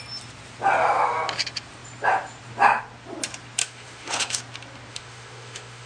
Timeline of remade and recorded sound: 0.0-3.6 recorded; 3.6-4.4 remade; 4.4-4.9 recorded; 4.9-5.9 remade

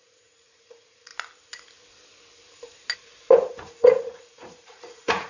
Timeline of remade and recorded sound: 0.0-1.1 remade; 1.1-3.5 recorded; 3.5-5.3 remade

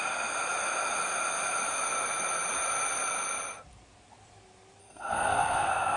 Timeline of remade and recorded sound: 0.0-4.8 recorded; 4.8-6.0 remade

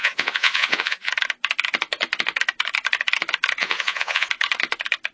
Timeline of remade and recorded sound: 0.0-1.1 remade; 1.1-3.6 recorded; 3.6-4.3 remade; 4.3-5.1 recorded

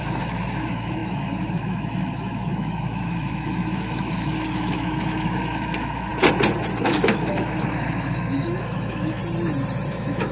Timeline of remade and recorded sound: 0.0-6.1 remade; 6.1-6.8 recorded; 6.8-9.2 remade; 9.2-9.9 recorded; 9.9-10.3 remade